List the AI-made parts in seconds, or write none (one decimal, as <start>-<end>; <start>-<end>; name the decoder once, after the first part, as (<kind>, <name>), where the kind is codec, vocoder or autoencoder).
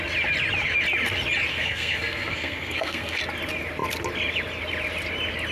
1.5-3.2 (codec, SNAC)